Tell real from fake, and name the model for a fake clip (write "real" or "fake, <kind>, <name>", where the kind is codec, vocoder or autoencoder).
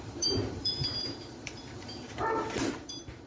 fake, vocoder, BigVGAN v2